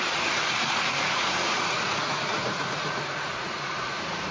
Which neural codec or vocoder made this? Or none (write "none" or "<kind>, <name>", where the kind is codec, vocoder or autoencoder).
vocoder, Vocos